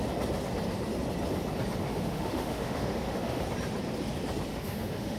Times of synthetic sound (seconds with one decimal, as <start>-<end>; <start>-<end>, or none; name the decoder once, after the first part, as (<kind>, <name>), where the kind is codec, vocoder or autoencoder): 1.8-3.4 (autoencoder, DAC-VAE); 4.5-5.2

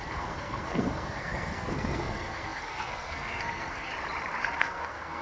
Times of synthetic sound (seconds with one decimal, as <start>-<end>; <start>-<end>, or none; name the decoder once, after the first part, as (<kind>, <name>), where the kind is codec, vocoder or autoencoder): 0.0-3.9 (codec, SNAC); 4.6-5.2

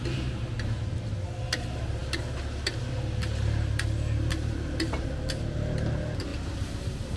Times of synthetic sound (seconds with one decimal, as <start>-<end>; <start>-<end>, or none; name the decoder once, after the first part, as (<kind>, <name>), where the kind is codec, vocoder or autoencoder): none